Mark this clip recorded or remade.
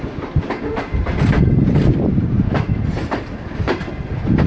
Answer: remade